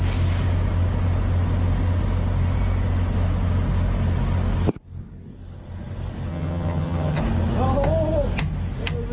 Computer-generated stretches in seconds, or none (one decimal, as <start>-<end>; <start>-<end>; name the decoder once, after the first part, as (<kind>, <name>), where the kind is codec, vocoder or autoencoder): 6.3-7.2 (vocoder, HiFi-GAN)